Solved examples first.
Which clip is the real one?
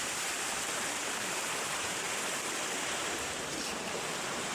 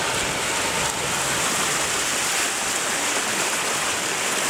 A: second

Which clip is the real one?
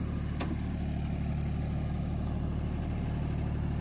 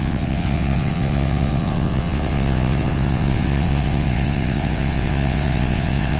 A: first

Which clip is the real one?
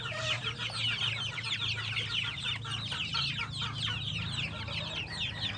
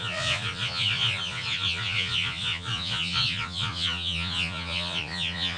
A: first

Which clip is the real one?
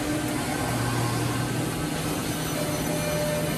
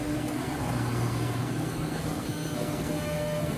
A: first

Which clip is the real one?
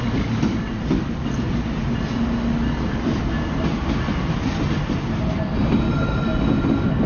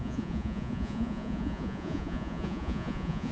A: first